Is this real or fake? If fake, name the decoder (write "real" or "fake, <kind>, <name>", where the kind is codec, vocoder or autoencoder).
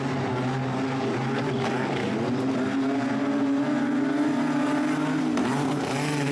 real